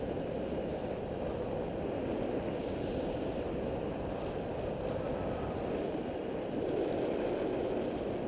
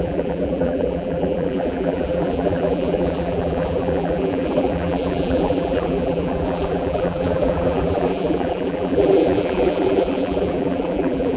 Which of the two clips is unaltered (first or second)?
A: first